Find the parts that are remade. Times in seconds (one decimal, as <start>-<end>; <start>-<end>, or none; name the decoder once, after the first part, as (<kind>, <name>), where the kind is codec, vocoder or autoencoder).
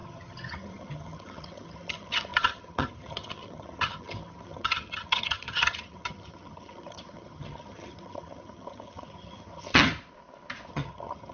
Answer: 0.0-9.9 (vocoder, HiFi-GAN); 10.7-11.3